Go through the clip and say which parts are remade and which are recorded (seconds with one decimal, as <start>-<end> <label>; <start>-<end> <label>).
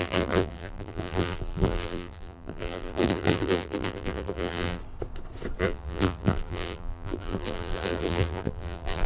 0.0-4.8 remade; 4.8-5.6 recorded; 5.6-9.1 remade